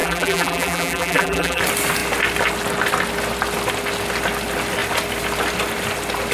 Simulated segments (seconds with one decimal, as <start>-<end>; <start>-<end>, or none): 0.0-1.6